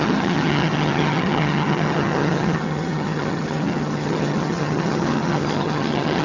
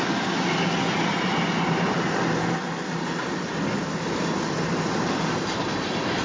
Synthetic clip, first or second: first